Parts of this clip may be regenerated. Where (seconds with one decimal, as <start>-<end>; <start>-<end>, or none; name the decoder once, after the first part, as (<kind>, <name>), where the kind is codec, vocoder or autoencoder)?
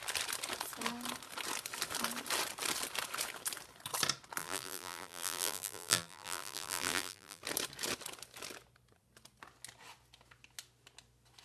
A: 4.4-7.4 (vocoder, BigVGAN v2)